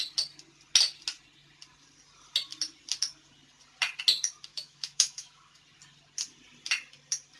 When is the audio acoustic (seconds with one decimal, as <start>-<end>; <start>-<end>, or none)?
0.0-4.5; 5.6-7.4